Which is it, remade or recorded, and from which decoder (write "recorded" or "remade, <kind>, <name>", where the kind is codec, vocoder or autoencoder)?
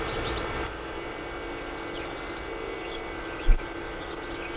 recorded